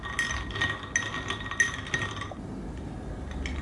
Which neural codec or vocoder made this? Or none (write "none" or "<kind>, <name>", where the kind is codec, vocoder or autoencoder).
none